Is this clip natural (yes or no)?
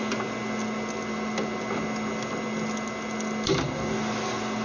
yes